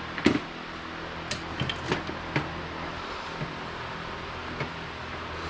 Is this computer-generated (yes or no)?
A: no